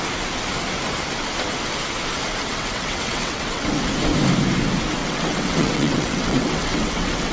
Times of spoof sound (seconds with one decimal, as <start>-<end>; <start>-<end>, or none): 2.5-3.9; 5.0-7.3